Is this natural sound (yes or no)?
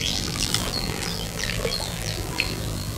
no